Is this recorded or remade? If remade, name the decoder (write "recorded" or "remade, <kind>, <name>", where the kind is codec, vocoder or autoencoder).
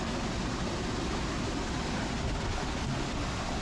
recorded